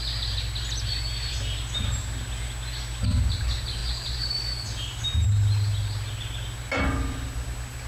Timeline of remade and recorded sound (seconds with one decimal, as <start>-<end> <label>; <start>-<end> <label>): 0.0-7.9 recorded